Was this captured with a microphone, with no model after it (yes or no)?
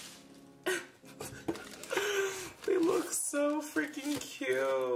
yes